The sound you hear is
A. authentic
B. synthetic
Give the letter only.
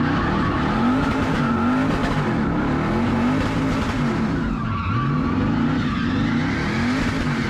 A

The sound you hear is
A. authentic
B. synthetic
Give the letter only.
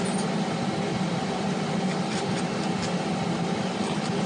A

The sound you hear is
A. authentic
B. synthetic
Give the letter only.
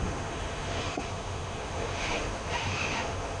B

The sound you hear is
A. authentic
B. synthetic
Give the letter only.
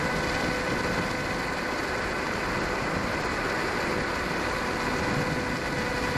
A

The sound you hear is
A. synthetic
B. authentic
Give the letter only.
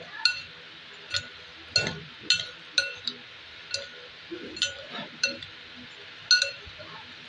B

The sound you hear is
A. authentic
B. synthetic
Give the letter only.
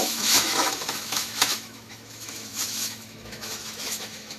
B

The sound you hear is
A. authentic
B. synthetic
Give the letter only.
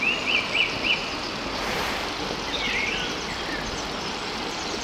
A